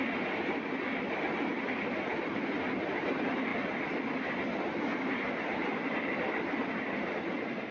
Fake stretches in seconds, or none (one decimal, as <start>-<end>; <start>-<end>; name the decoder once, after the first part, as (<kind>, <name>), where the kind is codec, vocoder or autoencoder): none